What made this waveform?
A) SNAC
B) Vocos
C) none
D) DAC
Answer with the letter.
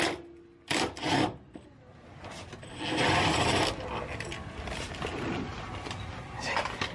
C